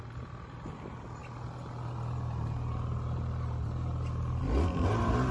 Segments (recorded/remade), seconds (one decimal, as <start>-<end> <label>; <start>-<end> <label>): 0.0-5.3 recorded